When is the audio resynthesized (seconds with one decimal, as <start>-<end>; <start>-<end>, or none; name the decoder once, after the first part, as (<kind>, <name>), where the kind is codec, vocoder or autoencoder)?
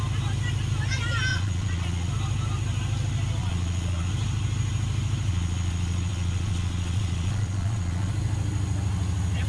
1.3-2.1 (vocoder, Vocos); 3.4-4.1; 5.3-8.1